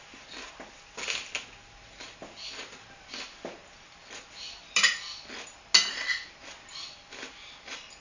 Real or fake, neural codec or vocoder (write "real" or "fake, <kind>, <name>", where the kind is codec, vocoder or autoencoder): real